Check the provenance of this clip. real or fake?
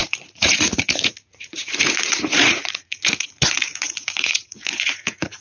fake